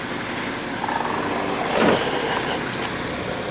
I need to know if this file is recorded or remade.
recorded